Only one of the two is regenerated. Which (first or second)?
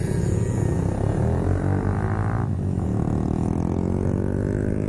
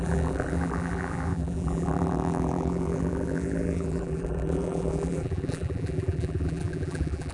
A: second